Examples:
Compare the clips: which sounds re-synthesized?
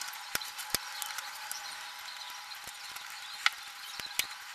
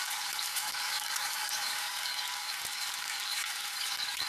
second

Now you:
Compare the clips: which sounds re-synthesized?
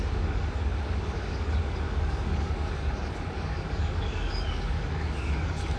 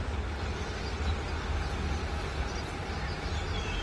first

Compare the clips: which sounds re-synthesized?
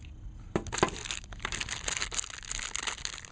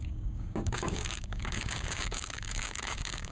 second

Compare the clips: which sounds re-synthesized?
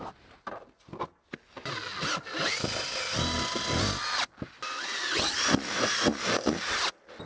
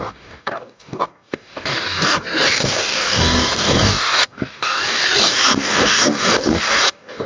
second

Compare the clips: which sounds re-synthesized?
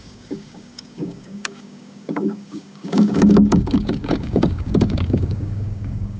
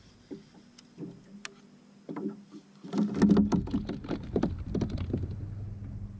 first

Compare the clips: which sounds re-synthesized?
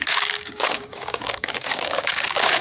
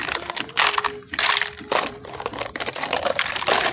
first